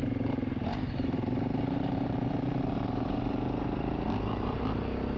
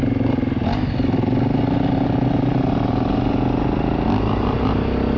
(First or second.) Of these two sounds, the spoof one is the first